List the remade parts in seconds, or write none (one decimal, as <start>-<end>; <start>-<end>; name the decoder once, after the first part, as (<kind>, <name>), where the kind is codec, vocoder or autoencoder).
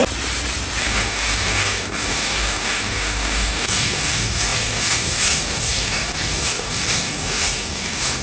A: 0.8-8.2 (codec, DAC)